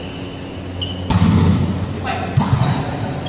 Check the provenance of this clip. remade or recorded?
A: recorded